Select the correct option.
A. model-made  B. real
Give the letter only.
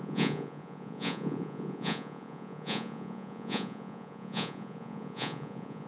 A